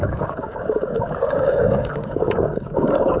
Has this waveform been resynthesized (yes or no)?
yes